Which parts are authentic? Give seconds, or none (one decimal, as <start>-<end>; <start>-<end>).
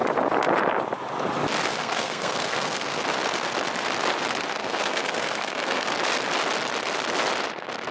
0.0-1.7; 3.0-4.6; 5.9-7.9